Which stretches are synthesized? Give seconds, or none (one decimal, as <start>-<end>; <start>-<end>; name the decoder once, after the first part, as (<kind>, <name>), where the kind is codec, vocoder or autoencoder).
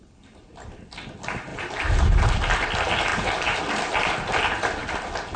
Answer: 1.5-2.3 (vocoder, BigVGAN v2); 3.1-3.6